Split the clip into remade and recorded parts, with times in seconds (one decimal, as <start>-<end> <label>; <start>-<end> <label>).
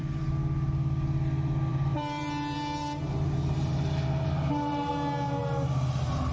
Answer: 0.0-1.7 recorded; 1.7-4.9 remade; 4.9-6.3 recorded